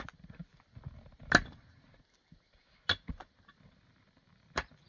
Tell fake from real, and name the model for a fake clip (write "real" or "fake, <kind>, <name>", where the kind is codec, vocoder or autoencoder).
real